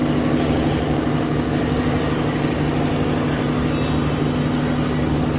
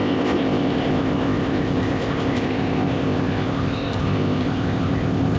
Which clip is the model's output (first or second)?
second